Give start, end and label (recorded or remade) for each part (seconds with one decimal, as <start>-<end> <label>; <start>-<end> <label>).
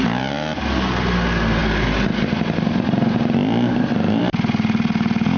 0.0-5.4 recorded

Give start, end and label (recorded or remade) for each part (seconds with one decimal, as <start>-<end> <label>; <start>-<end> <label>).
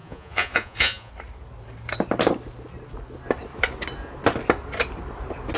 0.0-1.1 remade; 1.1-5.6 recorded